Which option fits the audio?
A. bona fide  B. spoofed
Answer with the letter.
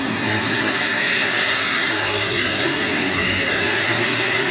B